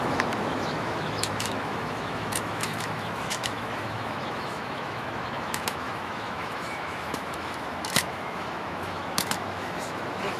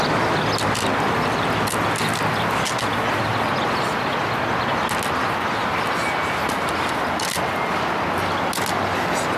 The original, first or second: second